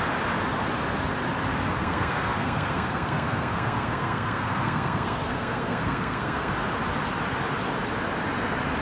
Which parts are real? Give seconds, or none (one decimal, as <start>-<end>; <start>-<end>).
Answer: 0.0-1.8; 6.5-8.8